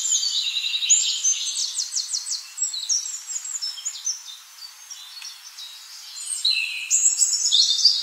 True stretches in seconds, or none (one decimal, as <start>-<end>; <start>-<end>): 0.0-8.0